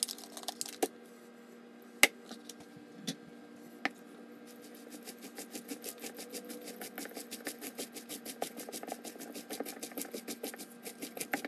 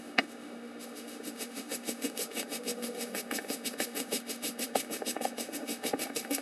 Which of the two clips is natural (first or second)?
first